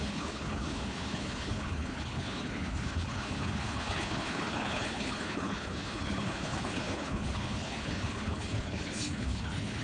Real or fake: fake